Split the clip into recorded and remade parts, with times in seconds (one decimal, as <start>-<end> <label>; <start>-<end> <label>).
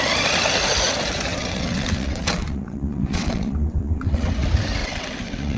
0.0-1.3 recorded; 1.3-4.3 remade; 4.3-4.8 recorded; 4.8-5.6 remade